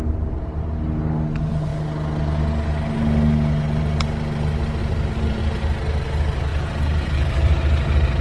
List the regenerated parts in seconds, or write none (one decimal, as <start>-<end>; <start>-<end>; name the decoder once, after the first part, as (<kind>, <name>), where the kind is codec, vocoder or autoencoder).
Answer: 4.8-5.4 (vocoder, BigVGAN v2); 6.5-7.6